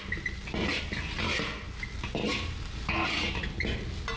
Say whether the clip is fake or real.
real